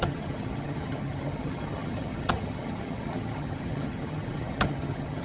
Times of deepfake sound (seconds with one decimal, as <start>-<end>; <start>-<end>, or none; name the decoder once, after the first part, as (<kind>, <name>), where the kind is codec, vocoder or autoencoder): 0.0-5.2 (vocoder, HiFi-GAN)